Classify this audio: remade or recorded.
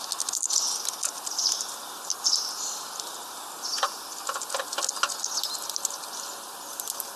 recorded